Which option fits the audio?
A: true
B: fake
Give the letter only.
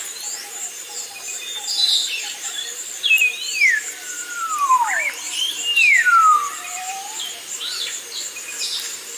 B